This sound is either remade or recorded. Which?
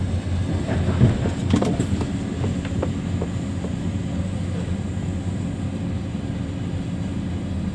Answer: recorded